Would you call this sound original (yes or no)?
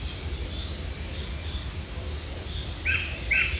yes